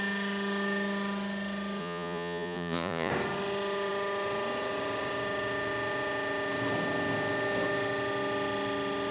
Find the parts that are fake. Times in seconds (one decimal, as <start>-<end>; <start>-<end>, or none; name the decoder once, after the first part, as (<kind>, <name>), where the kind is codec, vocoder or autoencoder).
1.8-3.1 (vocoder, Vocos)